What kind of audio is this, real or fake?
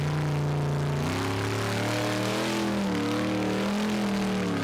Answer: real